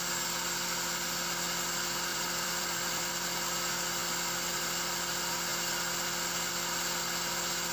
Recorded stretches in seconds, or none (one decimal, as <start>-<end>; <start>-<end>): 0.0-2.1; 3.1-7.7